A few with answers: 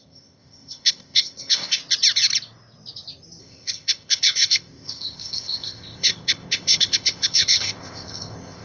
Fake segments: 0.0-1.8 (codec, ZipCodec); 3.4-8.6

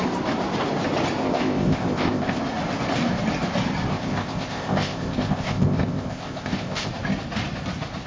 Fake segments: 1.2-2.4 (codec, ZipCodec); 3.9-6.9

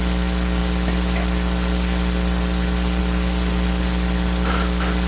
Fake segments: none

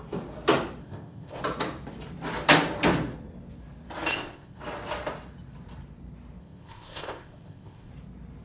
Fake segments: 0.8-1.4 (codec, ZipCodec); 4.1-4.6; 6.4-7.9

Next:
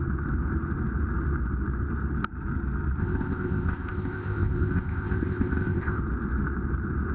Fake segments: 3.0-6.0 (codec, ZipCodec)

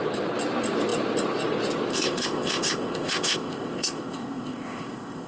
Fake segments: 1.9-5.3 (codec, ZipCodec)

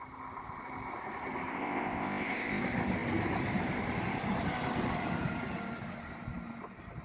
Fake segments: 1.5-2.6 (codec, ZipCodec)